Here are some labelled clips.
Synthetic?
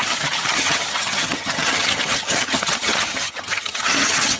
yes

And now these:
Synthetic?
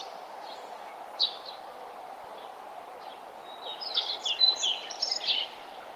no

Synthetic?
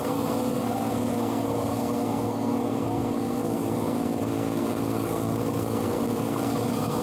yes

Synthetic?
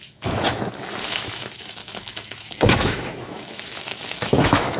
yes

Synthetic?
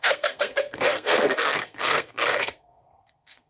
yes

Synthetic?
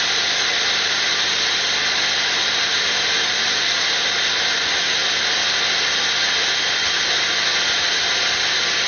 no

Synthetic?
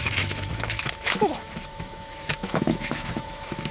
yes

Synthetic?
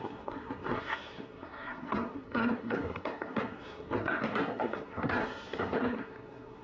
yes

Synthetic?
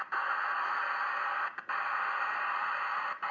no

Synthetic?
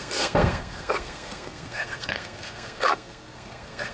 yes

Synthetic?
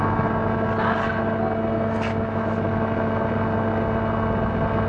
no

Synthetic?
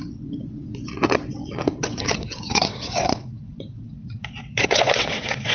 yes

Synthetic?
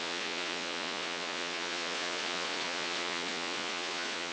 yes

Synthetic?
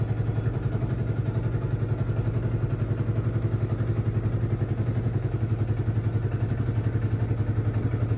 no